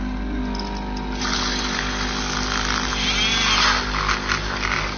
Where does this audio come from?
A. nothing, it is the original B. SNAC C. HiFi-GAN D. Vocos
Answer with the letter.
A